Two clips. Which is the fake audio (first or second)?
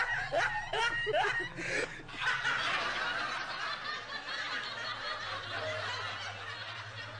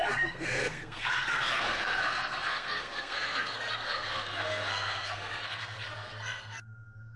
second